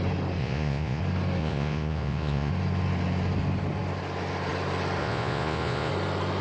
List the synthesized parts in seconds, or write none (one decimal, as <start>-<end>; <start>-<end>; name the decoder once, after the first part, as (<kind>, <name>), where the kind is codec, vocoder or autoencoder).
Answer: 0.4-1.0 (vocoder, Vocos); 1.4-2.5; 5.0-5.9